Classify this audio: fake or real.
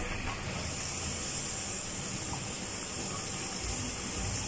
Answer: real